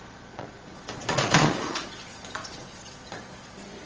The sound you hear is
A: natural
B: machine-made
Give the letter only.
B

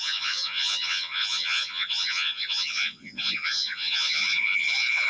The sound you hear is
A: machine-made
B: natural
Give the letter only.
A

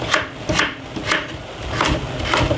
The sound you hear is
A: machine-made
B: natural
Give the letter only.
B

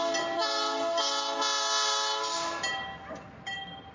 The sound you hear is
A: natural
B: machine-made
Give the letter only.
A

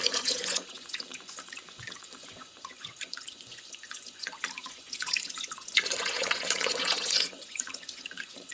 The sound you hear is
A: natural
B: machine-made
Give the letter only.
B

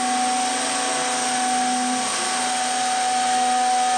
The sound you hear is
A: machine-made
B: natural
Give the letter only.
B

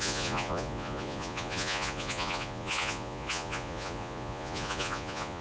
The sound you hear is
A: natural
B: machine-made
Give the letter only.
B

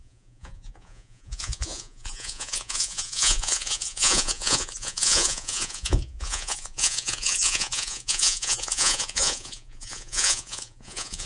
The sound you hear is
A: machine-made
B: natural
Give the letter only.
A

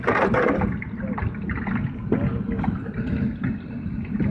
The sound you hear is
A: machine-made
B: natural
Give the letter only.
B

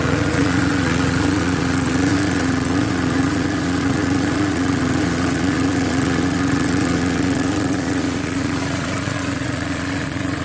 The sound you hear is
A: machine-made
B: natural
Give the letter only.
A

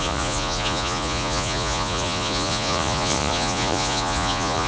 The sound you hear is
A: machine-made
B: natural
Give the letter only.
A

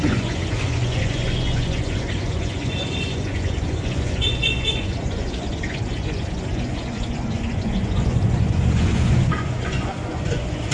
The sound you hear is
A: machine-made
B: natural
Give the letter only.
A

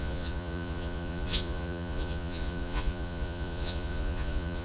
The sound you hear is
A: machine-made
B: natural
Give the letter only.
A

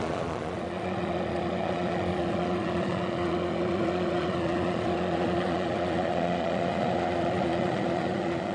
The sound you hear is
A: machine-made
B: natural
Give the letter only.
A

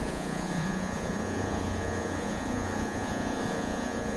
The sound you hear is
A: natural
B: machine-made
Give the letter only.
B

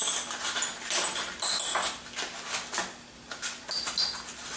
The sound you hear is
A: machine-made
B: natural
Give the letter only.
B